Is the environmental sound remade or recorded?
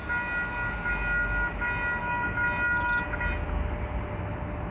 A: recorded